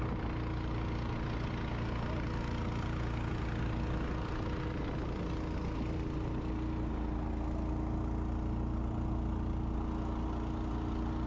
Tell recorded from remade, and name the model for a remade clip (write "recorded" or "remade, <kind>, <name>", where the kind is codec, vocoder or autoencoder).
recorded